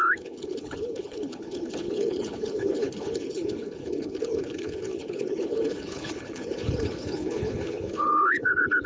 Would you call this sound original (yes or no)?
no